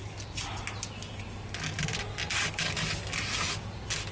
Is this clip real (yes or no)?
yes